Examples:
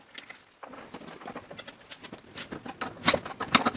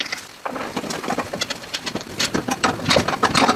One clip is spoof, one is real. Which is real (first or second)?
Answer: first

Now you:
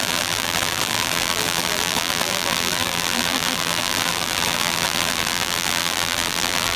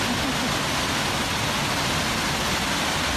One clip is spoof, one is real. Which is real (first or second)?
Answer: second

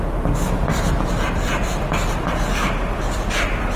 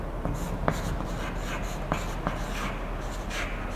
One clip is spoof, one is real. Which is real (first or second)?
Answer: second